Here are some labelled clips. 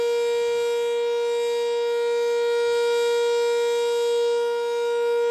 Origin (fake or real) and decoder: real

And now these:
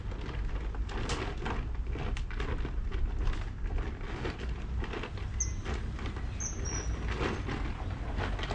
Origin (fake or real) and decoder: real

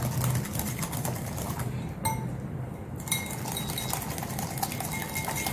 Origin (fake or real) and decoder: real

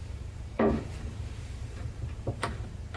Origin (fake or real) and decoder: fake, vocoder, BigVGAN v2